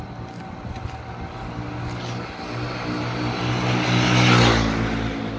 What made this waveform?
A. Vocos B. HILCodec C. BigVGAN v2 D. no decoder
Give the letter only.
D